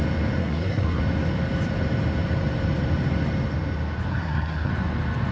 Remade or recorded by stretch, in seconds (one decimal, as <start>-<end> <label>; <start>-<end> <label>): 0.0-0.4 recorded; 0.4-1.0 remade; 1.0-4.1 recorded; 4.1-4.7 remade; 4.7-5.3 recorded